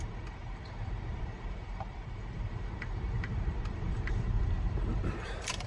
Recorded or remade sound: remade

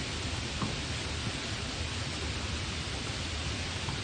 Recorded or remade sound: recorded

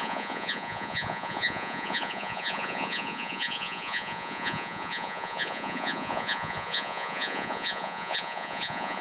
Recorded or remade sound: remade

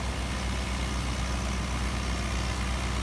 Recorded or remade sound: recorded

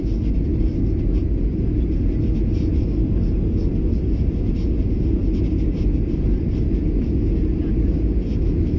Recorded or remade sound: recorded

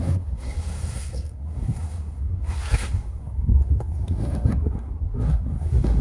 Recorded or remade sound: remade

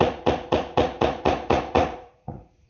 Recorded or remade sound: remade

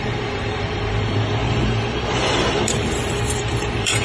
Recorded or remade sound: remade